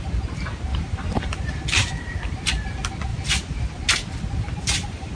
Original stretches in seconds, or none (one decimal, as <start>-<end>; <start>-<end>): 0.0-0.7; 1.6-3.1; 3.7-5.1